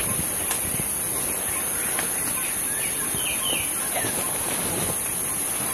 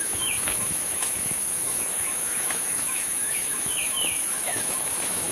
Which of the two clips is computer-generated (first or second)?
second